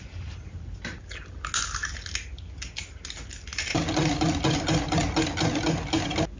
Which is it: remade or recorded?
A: recorded